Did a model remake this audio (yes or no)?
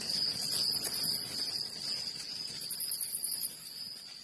no